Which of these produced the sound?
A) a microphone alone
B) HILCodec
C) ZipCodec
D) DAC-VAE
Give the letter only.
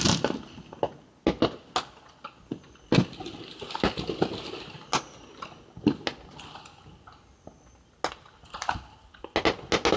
A